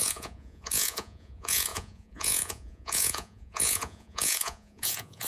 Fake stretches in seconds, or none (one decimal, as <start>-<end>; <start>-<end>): 0.0-5.3